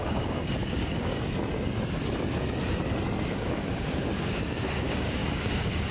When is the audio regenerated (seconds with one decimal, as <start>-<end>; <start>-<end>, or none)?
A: 0.0-1.1; 3.4-5.9